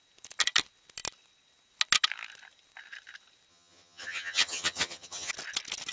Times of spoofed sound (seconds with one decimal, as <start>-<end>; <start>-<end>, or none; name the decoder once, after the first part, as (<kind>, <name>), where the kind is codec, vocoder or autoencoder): 3.5-5.3 (vocoder, HiFi-GAN)